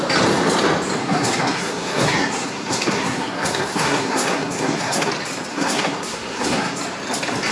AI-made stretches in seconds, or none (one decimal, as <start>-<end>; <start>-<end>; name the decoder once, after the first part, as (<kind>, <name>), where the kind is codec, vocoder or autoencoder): 1.0-5.1 (codec, SNAC); 5.5-6.8